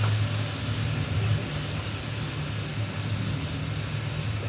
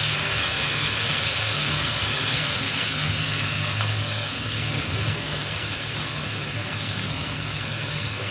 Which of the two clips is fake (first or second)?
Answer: second